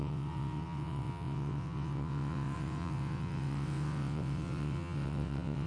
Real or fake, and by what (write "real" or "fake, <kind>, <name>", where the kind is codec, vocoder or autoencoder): fake, vocoder, WaveNeXt